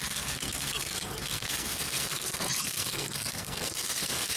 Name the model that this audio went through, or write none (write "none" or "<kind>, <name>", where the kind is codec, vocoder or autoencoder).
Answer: codec, SNAC